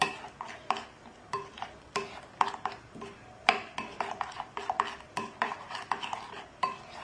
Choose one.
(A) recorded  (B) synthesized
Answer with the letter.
A